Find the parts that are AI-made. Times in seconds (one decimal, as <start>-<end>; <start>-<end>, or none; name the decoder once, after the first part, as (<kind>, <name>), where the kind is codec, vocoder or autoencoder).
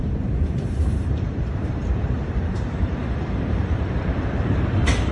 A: 0.0-5.1 (vocoder, BigVGAN v2)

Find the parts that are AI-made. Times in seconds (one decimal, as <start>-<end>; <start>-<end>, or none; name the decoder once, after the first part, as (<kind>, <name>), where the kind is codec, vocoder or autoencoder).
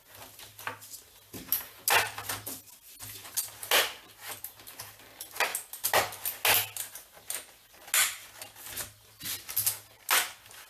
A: none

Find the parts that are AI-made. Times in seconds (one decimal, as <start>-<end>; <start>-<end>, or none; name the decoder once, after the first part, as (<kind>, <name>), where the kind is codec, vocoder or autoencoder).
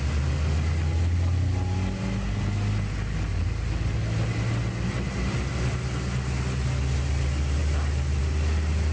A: none